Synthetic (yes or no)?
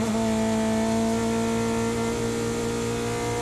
no